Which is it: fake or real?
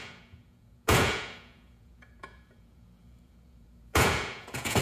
fake